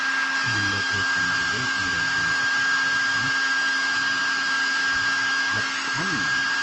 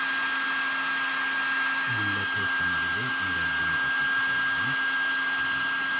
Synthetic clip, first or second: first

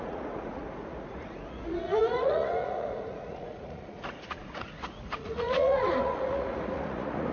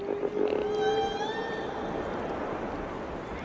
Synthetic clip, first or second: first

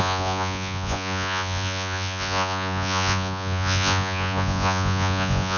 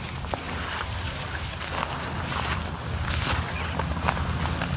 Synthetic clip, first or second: first